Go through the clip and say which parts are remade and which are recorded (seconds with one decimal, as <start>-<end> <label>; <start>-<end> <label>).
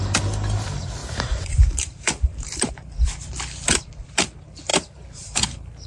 0.0-1.0 recorded; 1.0-2.7 remade; 2.7-4.7 recorded; 4.7-5.9 remade